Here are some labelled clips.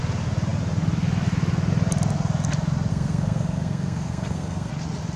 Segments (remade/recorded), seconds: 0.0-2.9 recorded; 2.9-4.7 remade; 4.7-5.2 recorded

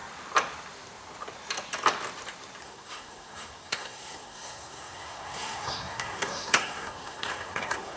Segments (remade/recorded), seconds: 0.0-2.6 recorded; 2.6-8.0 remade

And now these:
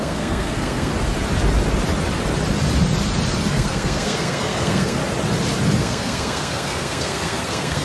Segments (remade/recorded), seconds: 0.0-0.9 remade; 0.9-3.5 recorded; 3.5-5.0 remade; 5.0-5.8 recorded; 5.8-7.8 remade

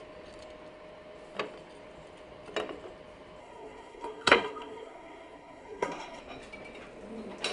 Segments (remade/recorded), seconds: 0.0-3.4 recorded; 3.4-6.2 remade; 6.2-7.5 recorded

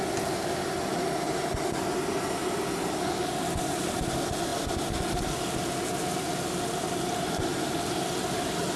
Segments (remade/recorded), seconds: 0.0-8.8 recorded